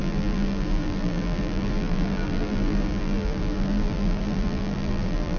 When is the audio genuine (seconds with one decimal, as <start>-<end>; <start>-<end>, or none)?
none